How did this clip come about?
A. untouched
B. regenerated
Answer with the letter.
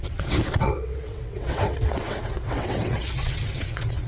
B